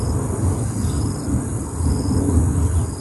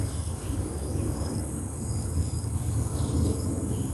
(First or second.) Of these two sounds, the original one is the first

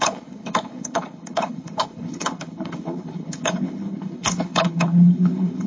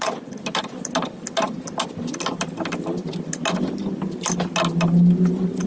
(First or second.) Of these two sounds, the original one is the second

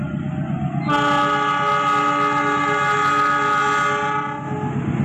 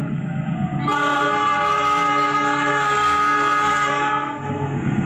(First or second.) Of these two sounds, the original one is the first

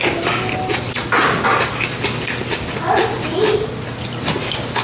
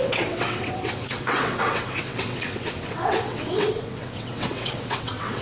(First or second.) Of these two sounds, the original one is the first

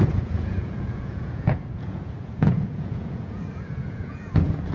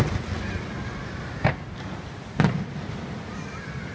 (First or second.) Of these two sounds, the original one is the second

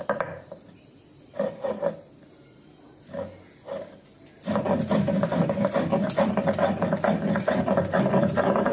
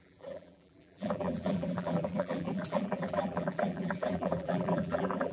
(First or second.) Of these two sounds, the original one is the first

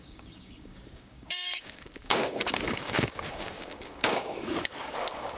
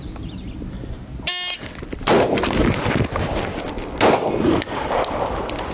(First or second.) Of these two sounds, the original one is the second